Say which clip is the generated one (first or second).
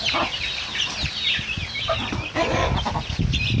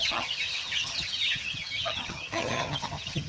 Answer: second